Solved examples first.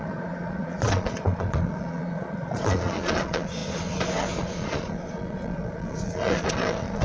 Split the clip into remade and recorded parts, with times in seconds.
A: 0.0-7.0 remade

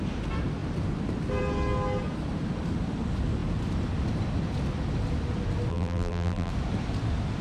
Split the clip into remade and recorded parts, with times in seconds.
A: 0.0-5.7 recorded; 5.7-6.5 remade; 6.5-7.4 recorded